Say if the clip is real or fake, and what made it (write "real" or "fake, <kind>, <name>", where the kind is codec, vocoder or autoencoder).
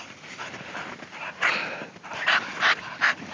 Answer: real